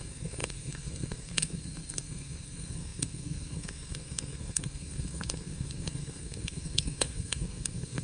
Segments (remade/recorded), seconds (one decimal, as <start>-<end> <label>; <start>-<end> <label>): 0.0-8.0 remade